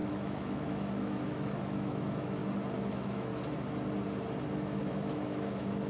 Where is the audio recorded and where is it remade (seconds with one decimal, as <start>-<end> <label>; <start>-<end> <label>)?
0.0-2.4 remade; 2.4-2.9 recorded; 2.9-3.3 remade; 3.3-4.8 recorded; 4.8-5.9 remade